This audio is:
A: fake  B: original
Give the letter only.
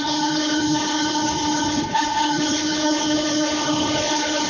A